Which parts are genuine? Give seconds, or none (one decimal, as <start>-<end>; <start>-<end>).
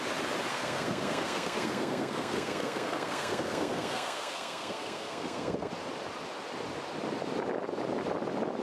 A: 0.0-0.5; 5.7-8.6